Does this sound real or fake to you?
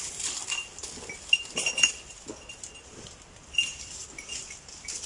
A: real